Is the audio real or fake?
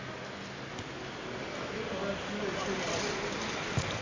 real